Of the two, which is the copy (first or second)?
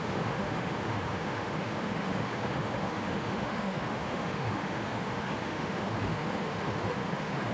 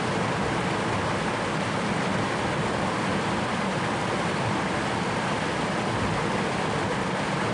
first